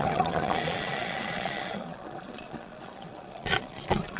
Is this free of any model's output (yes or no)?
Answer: no